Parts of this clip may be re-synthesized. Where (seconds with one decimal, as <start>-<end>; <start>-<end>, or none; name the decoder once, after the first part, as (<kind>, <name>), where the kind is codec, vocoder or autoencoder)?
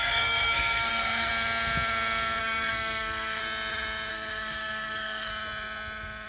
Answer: 0.0-1.3 (codec, SNAC); 2.4-3.4; 4.1-5.3